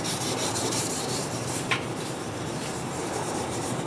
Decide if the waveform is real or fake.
fake